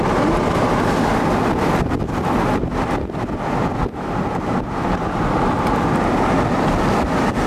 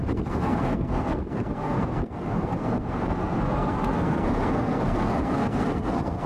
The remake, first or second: second